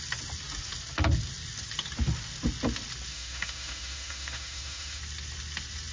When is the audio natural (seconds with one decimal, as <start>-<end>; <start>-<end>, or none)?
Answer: 0.0-3.1; 5.0-5.9